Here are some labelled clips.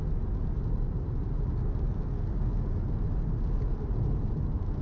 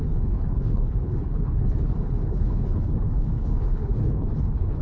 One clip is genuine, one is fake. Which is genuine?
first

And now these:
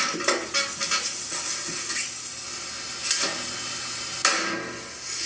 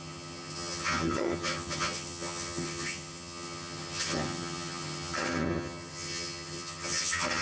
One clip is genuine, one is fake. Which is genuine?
first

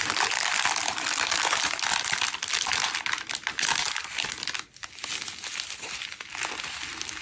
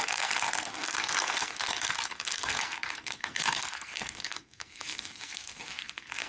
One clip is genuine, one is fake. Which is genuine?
first